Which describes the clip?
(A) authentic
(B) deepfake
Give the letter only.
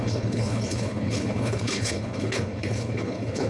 B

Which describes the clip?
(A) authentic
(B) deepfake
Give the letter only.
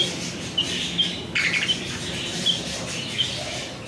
A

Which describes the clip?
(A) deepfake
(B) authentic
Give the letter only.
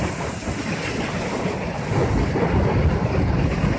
B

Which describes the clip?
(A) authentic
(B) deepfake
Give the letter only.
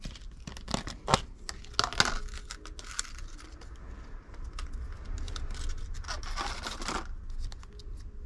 A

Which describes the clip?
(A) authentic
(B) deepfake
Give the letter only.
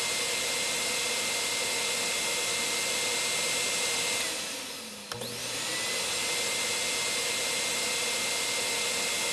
A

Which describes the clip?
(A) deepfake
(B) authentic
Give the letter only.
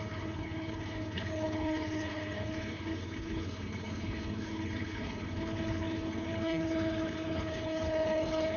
A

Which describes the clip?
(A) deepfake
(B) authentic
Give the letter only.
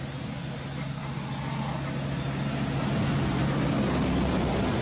B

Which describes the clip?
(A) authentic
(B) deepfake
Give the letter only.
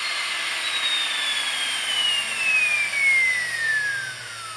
A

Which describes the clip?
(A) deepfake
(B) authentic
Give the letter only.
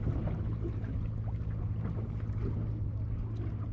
B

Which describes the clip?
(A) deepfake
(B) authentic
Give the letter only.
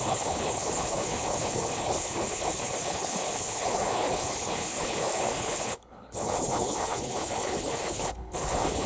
A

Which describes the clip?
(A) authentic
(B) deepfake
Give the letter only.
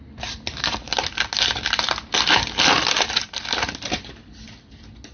A